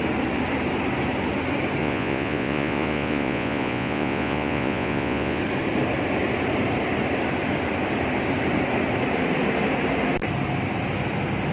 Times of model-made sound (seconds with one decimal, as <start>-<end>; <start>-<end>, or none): 1.8-5.4

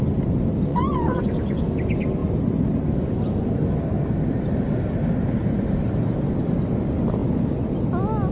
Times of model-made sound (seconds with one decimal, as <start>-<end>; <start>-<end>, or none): 0.7-1.2

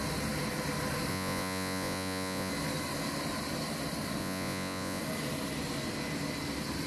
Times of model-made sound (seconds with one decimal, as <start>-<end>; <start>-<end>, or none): 1.1-2.5; 4.2-5.0

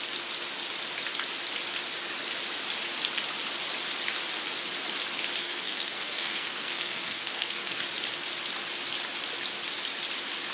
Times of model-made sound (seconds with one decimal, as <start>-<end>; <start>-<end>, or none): 5.4-7.8

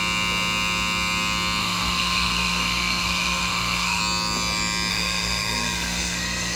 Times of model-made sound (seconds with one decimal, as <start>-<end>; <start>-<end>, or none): 1.6-4.0; 4.9-6.6

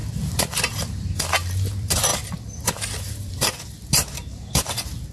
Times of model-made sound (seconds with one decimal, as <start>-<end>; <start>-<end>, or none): 2.1-3.6

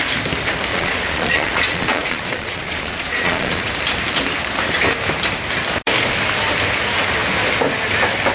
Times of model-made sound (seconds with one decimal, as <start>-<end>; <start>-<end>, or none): 0.7-3.7

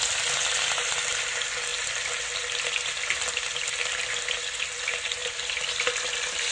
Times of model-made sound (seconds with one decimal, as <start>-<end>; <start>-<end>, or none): 5.2-6.5